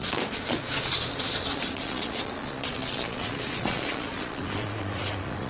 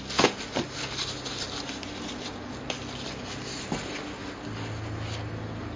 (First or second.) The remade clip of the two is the first